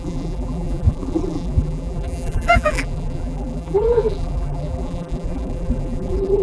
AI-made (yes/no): yes